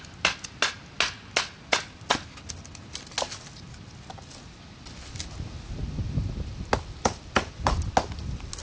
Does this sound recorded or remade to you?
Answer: recorded